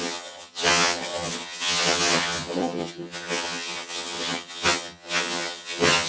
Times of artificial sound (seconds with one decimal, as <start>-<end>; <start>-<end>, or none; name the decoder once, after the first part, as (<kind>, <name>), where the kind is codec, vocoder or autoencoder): 0.0-6.1 (vocoder, HiFi-GAN)